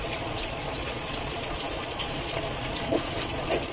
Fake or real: fake